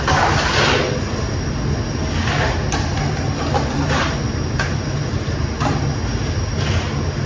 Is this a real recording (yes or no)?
yes